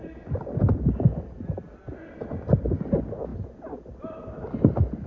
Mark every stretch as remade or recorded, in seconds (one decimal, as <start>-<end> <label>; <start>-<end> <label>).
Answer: 0.0-5.1 recorded